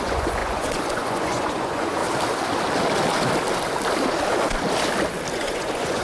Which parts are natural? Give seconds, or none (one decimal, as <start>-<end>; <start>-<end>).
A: 2.0-5.3